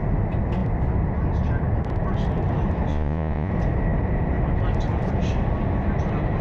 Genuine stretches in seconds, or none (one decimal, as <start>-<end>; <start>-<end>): 0.0-2.9; 3.5-6.4